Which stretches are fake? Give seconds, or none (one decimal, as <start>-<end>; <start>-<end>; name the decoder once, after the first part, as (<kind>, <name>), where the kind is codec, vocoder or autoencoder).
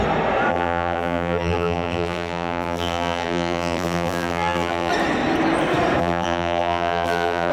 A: 0.5-4.9 (vocoder, BigVGAN v2); 6.0-7.5